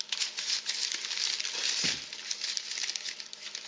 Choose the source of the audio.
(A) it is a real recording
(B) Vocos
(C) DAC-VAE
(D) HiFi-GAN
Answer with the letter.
A